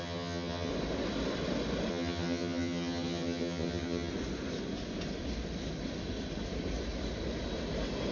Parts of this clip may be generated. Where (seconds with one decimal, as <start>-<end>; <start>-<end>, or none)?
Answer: 0.0-0.7; 1.9-4.1